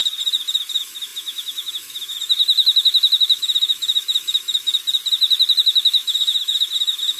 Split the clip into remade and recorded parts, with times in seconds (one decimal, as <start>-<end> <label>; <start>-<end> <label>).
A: 0.0-0.7 recorded; 0.7-4.7 remade; 4.7-5.6 recorded; 5.6-7.2 remade